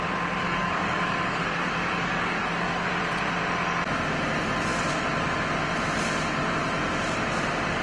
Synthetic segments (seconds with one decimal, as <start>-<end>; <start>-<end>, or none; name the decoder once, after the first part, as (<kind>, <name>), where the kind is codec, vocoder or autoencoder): 0.4-2.9 (codec, DAC)

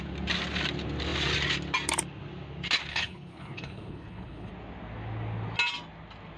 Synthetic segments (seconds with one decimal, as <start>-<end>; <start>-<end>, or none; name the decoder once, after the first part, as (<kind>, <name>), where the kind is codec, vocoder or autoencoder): 2.9-4.5 (codec, HILCodec)